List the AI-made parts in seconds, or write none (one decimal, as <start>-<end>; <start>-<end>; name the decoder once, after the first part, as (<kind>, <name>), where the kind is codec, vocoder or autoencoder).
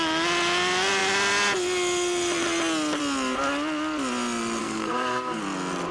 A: 4.6-5.4 (codec, SNAC)